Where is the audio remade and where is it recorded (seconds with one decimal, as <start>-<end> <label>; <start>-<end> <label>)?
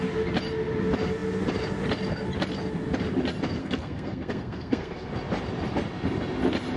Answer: 0.0-3.6 recorded; 3.6-5.1 remade; 5.1-6.8 recorded